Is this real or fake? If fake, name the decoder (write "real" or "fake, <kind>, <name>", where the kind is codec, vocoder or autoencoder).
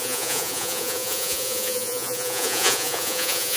fake, vocoder, Vocos